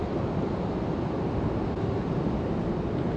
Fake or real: real